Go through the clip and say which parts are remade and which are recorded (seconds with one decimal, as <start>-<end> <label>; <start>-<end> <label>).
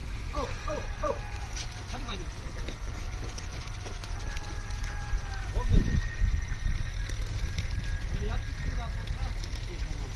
0.0-5.3 remade; 5.3-5.7 recorded; 5.7-6.9 remade; 6.9-10.2 recorded